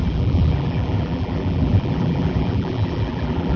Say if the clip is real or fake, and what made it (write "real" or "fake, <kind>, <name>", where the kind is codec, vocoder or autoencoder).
fake, vocoder, BigVGAN v2